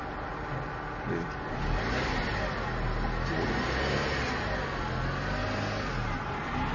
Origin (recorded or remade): recorded